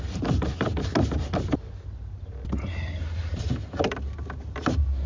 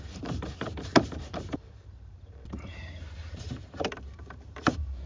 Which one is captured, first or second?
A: first